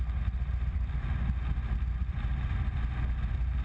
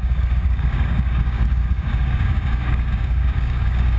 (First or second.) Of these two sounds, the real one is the first